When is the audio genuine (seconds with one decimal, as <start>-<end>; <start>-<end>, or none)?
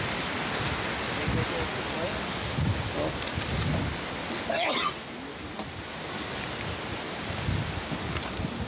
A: 0.0-8.7